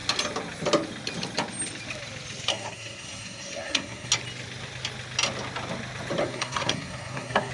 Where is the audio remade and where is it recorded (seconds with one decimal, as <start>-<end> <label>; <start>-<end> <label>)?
0.0-2.5 recorded; 2.5-4.1 remade; 4.1-6.2 recorded; 6.2-7.5 remade